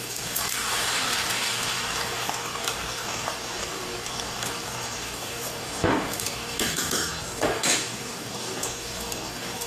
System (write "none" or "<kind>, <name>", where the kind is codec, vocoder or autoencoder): codec, DAC